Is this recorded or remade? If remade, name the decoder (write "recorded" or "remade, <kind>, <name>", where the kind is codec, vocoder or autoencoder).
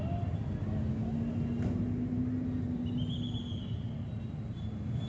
recorded